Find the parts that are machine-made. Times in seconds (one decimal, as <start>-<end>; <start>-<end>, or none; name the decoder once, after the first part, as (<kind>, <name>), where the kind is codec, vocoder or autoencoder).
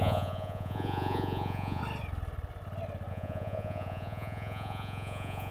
0.0-1.8 (vocoder, Vocos); 3.1-5.5